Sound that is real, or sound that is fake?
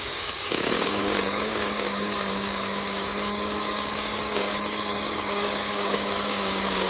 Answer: fake